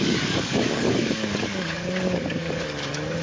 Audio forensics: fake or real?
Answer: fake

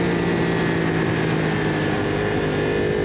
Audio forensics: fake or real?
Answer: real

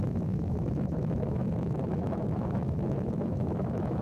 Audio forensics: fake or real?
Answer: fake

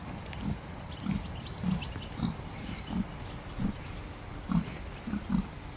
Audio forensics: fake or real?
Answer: real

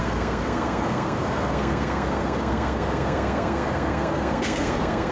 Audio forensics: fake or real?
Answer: fake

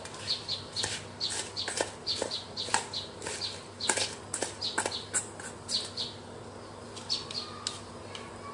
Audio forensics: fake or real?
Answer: real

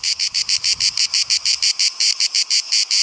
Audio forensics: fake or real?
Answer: real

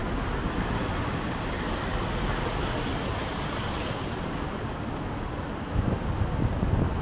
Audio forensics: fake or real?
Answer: real